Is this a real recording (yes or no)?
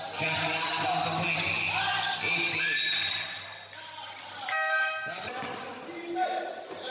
yes